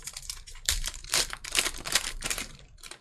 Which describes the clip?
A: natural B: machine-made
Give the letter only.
B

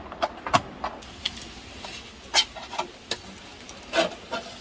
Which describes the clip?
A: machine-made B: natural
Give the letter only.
B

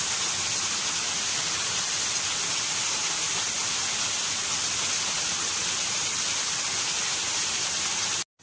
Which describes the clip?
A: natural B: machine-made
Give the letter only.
A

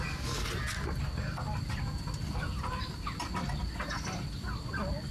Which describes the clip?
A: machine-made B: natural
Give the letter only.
B